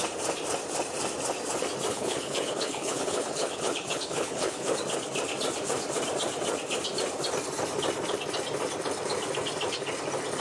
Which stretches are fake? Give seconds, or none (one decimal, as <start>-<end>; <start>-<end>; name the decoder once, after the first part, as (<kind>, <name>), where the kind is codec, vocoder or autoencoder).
1.9-4.8 (codec, HILCodec)